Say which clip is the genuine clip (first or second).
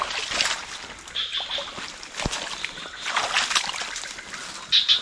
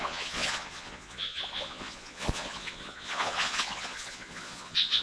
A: first